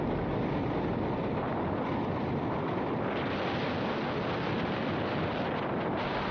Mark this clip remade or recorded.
recorded